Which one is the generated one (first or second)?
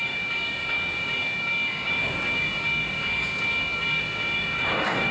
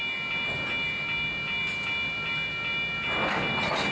first